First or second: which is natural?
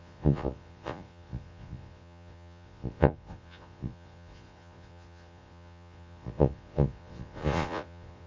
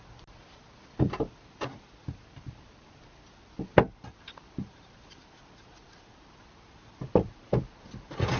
second